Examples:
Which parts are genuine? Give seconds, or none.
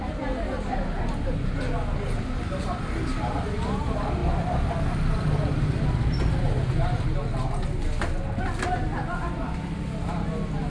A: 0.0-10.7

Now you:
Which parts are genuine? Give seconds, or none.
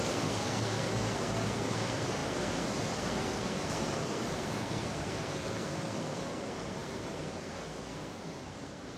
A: none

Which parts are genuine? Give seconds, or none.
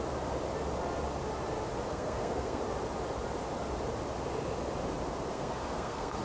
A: 0.0-1.9; 2.6-5.3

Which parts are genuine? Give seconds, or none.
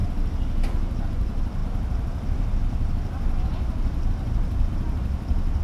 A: 0.0-5.6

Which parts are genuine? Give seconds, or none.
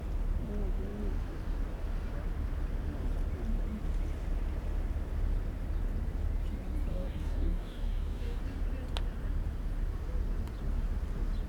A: 0.0-6.9; 8.4-11.5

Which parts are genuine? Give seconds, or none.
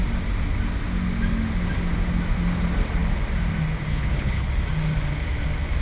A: 0.0-3.9; 4.5-5.8